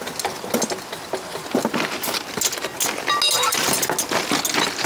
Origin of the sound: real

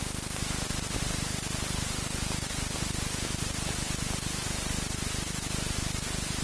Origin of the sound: real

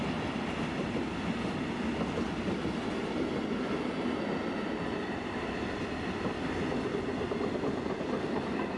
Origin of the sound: real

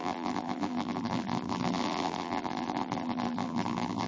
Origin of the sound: fake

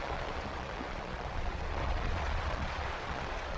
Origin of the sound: fake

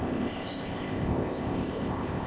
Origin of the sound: fake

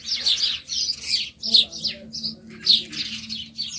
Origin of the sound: real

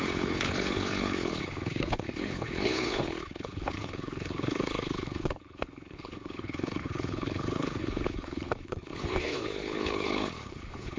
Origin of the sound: fake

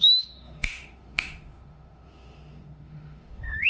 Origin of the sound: fake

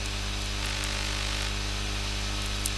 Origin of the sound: real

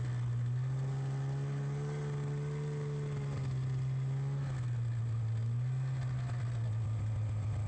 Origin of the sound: real